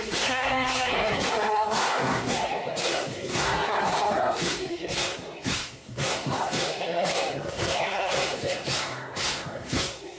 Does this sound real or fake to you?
fake